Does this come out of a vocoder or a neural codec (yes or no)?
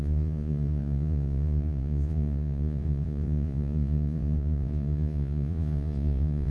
yes